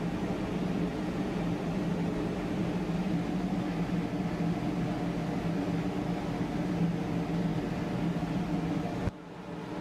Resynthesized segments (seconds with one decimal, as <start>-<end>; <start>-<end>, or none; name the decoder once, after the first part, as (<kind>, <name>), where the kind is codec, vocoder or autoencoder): 0.9-1.4 (vocoder, Vocos)